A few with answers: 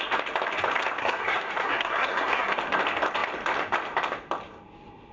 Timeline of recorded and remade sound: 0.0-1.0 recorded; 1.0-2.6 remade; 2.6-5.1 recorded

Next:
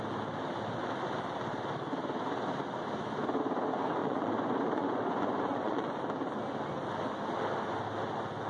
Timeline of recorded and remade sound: 0.0-4.0 recorded; 4.0-6.0 remade; 6.0-8.5 recorded

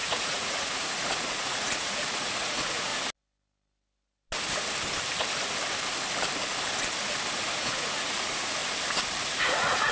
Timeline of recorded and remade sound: 0.0-2.9 remade; 2.9-7.5 recorded; 7.5-8.6 remade; 8.6-9.2 recorded; 9.2-9.9 remade

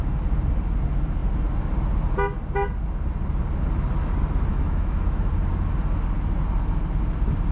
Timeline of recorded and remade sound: 0.0-4.5 recorded; 4.5-5.3 remade; 5.3-7.5 recorded

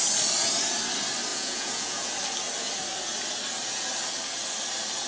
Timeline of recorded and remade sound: 0.0-1.3 recorded; 1.3-2.1 remade; 2.1-5.1 recorded

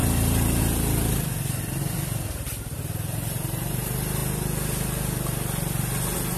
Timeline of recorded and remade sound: 0.0-6.4 recorded